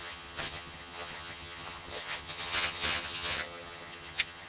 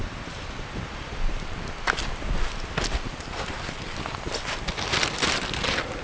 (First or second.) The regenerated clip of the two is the first